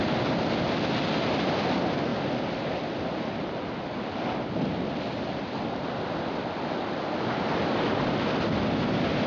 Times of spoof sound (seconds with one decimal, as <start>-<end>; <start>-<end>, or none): none